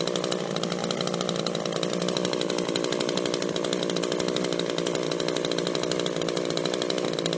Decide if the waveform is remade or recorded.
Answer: recorded